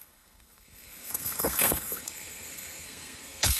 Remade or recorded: remade